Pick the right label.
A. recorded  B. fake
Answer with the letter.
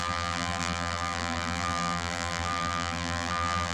B